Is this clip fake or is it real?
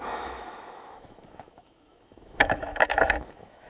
fake